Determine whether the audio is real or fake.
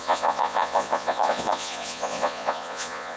fake